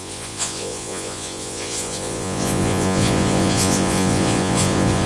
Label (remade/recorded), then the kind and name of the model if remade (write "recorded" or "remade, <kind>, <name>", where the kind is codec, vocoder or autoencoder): remade, vocoder, Vocos